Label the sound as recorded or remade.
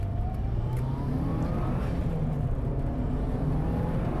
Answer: remade